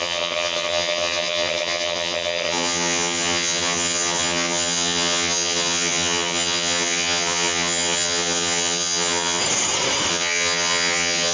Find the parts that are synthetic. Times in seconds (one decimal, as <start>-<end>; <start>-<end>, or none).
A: 0.0-9.4; 10.1-11.3